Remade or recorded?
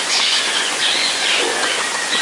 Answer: remade